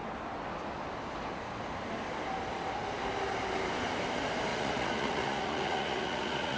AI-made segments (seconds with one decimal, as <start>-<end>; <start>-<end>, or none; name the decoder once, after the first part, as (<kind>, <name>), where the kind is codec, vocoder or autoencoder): 4.5-6.6 (vocoder, Vocos)